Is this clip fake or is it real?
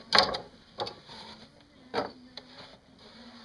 real